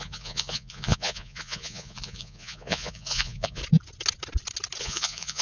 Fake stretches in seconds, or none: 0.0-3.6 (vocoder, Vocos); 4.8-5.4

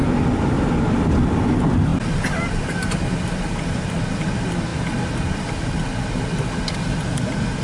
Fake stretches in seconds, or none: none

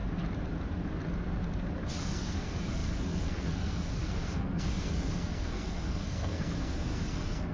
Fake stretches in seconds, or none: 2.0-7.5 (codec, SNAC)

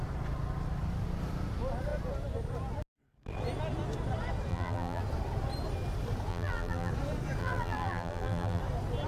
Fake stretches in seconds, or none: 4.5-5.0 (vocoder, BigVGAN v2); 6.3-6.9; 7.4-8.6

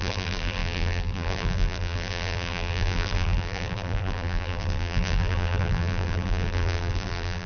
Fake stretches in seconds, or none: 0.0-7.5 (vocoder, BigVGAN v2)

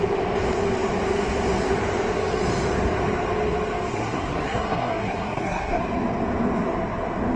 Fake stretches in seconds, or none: 3.9-5.8 (codec, SNAC)

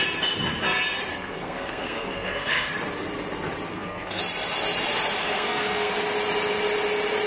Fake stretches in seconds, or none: 1.1-2.7 (codec, SNAC); 3.7-4.2; 5.2-5.9